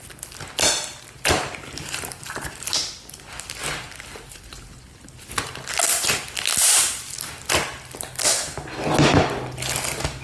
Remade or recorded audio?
recorded